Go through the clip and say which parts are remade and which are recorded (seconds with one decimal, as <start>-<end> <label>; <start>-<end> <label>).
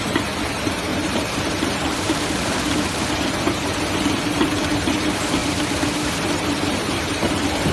0.0-0.9 recorded; 0.9-3.0 remade; 3.0-5.4 recorded; 5.4-6.3 remade; 6.3-7.7 recorded